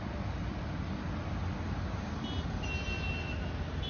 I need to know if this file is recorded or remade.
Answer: recorded